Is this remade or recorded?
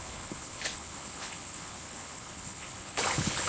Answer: remade